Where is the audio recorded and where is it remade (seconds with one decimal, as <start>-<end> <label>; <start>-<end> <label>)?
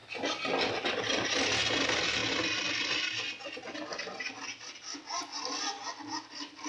0.0-6.7 recorded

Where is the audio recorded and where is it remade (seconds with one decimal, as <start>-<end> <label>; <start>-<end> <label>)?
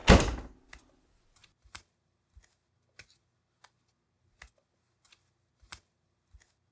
0.0-6.7 recorded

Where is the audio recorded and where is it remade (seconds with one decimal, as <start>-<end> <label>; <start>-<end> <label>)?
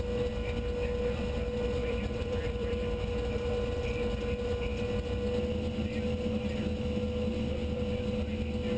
0.0-1.8 recorded; 1.8-3.1 remade; 3.1-8.8 recorded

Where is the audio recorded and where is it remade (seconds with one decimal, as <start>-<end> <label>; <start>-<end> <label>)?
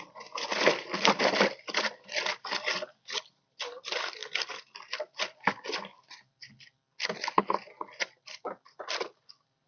0.0-4.2 remade; 4.2-4.8 recorded; 4.8-6.4 remade; 6.4-8.0 recorded; 8.0-9.7 remade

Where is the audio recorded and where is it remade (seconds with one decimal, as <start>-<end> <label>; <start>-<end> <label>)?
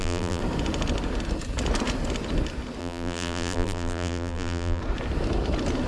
0.0-0.4 remade; 0.4-2.8 recorded; 2.8-4.8 remade; 4.8-5.9 recorded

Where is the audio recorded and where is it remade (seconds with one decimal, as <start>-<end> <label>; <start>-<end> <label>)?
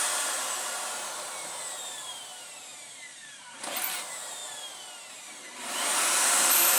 0.0-4.4 remade; 4.4-5.1 recorded; 5.1-6.8 remade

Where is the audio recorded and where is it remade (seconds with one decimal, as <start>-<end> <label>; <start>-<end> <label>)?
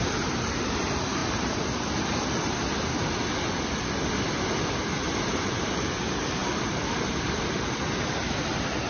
0.0-1.2 remade; 1.2-5.2 recorded; 5.2-8.9 remade